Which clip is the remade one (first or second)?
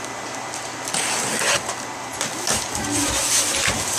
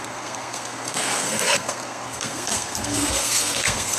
second